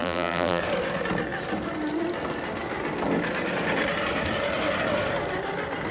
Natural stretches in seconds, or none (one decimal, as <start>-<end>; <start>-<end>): 0.6-5.9